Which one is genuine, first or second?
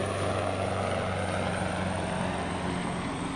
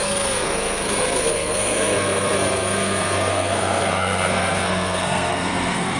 first